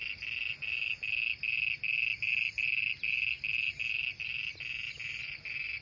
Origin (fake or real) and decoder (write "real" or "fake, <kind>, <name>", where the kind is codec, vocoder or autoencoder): real